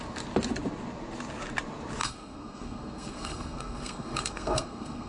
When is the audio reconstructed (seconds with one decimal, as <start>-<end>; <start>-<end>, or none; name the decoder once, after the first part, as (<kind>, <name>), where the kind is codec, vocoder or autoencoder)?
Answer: 2.0-5.1 (codec, SNAC)